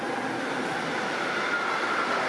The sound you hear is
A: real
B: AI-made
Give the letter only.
A